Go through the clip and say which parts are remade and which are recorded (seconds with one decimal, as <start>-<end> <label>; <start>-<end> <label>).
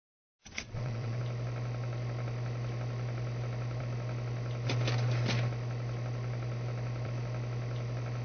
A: 0.0-0.4 recorded; 0.4-1.2 remade; 1.2-8.2 recorded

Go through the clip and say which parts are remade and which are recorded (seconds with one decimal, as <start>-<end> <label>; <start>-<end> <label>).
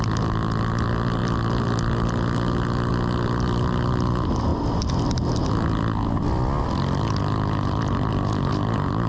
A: 0.0-9.1 recorded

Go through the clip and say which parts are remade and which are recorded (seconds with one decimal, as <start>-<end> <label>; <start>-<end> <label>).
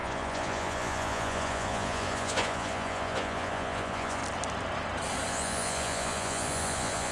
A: 0.0-4.2 remade; 4.2-5.3 recorded; 5.3-7.1 remade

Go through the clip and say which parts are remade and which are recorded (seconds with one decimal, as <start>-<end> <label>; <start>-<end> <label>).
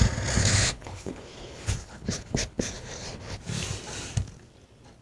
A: 0.0-0.4 recorded; 0.4-3.4 remade; 3.4-5.0 recorded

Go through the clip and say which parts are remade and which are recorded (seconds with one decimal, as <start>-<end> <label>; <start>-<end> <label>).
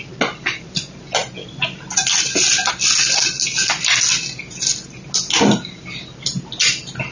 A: 0.0-7.1 recorded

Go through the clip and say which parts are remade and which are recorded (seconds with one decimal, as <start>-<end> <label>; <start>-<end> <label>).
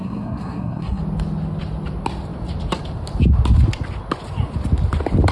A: 0.0-1.0 remade; 1.0-5.3 recorded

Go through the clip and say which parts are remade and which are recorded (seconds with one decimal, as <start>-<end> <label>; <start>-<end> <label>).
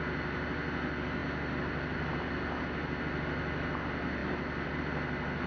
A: 0.0-5.5 recorded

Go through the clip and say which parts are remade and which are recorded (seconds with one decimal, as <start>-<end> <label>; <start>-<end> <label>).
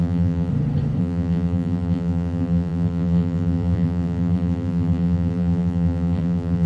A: 0.0-0.5 remade; 0.5-1.0 recorded; 1.0-6.7 remade